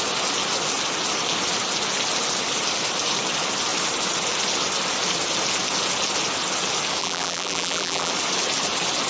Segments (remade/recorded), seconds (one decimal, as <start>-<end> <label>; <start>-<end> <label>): 0.0-7.0 recorded; 7.0-8.1 remade; 8.1-9.1 recorded